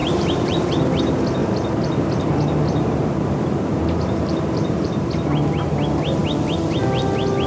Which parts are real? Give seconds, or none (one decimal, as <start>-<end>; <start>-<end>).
0.6-1.4; 5.1-7.5